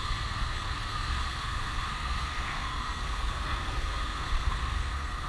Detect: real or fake fake